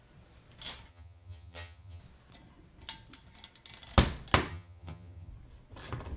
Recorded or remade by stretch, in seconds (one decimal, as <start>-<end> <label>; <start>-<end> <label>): 0.0-0.9 recorded; 0.9-2.0 remade; 2.0-4.5 recorded; 4.5-5.3 remade; 5.3-6.2 recorded